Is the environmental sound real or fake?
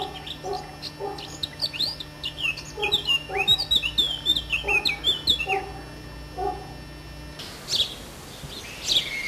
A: real